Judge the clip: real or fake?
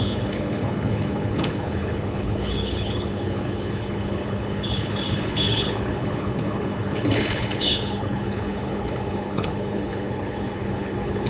fake